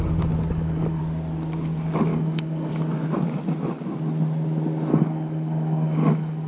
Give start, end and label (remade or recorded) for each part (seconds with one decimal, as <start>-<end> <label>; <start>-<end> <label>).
0.0-0.5 recorded; 0.5-1.0 remade; 1.0-2.1 recorded; 2.1-2.7 remade; 2.7-4.9 recorded; 4.9-6.5 remade